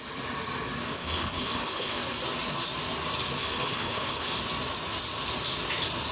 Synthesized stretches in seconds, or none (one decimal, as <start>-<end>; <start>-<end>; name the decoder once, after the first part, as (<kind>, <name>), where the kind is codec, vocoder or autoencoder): 0.9-2.0 (codec, HILCodec); 3.4-4.4